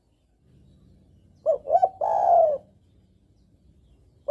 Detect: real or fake real